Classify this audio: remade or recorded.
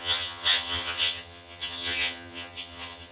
remade